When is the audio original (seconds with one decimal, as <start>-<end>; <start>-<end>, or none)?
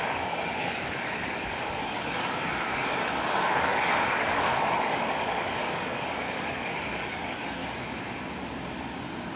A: 7.6-9.4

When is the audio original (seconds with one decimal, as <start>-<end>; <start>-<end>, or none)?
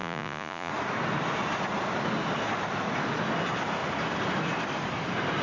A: 0.7-5.4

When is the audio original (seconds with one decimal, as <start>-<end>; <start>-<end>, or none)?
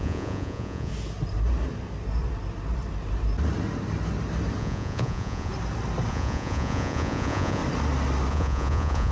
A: 0.9-4.6; 5.5-6.1; 7.6-8.3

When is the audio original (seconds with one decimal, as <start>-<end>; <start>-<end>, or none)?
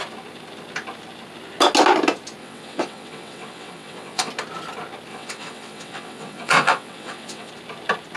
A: 0.0-2.4; 4.3-5.1; 7.5-8.2